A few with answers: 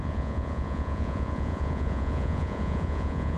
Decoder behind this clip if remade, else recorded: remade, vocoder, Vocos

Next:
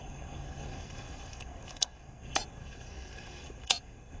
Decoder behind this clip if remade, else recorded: remade, codec, SNAC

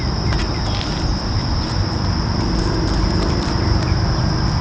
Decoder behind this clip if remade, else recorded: recorded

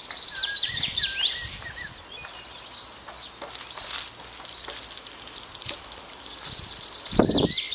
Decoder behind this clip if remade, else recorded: recorded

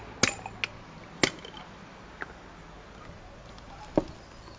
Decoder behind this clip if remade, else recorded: recorded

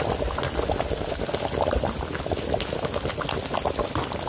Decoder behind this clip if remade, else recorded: recorded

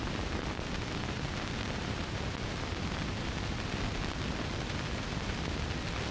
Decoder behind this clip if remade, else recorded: remade, vocoder, BigVGAN v2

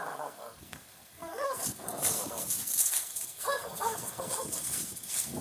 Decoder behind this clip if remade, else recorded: remade, codec, SNAC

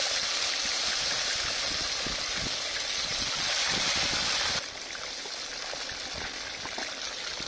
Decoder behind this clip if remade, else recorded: recorded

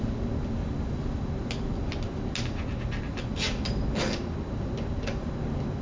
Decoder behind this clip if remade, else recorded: recorded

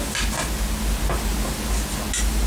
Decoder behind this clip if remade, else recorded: recorded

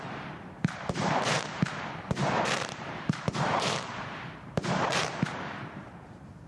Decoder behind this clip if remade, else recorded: remade, vocoder, BigVGAN v2